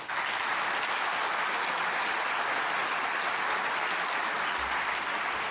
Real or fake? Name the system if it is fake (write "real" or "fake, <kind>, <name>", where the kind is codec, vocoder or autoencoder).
real